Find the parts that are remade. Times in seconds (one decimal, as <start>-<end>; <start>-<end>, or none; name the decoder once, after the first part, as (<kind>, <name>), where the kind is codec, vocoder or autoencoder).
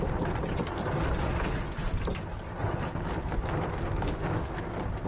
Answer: 3.9-4.5 (codec, DAC)